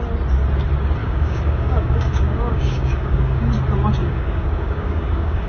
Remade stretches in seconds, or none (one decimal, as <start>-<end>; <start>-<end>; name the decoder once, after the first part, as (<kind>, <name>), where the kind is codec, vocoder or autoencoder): 1.0-3.4 (codec, DAC); 4.0-5.5